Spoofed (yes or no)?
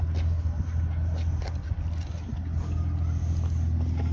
no